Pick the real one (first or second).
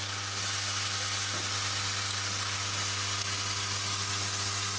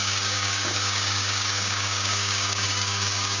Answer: first